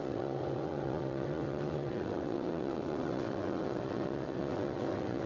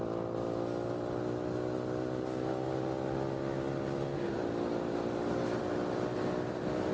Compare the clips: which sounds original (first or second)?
second